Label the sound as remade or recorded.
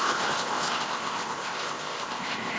remade